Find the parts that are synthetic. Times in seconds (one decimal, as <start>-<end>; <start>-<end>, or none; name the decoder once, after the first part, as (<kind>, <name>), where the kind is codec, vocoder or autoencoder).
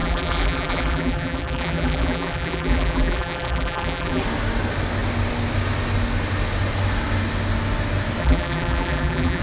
0.0-4.2 (vocoder, BigVGAN v2); 8.2-9.4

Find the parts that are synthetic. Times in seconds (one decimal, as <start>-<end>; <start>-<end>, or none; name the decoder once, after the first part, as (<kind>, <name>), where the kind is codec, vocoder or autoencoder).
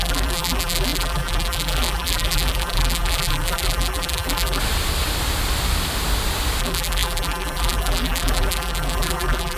0.0-4.6 (vocoder, BigVGAN v2); 6.6-9.6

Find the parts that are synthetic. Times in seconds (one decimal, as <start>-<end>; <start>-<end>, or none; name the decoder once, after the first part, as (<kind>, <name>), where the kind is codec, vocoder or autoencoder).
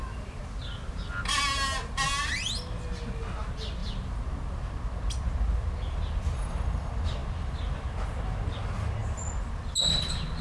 none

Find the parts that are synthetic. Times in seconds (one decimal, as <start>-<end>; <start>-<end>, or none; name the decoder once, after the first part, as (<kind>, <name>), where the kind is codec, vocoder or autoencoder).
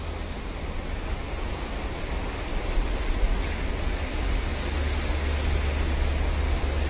2.5-3.7 (vocoder, BigVGAN v2)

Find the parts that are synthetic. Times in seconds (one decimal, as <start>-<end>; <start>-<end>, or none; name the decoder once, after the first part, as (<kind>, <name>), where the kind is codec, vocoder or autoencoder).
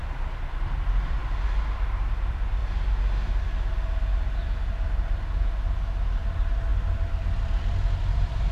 0.0-2.6 (vocoder, BigVGAN v2); 6.1-8.5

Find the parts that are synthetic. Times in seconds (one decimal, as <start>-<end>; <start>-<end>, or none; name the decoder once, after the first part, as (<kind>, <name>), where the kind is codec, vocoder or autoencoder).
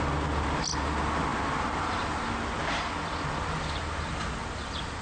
none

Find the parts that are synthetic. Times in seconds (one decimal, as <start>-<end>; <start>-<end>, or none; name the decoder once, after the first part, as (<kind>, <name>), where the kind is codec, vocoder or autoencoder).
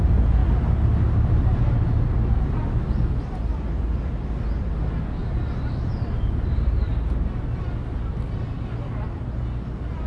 0.0-0.4 (vocoder, BigVGAN v2); 2.3-5.2; 6.0-6.9; 8.3-10.1